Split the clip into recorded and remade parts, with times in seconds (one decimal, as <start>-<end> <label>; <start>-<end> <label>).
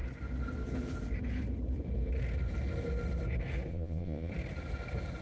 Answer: 0.0-3.7 recorded; 3.7-4.3 remade; 4.3-5.2 recorded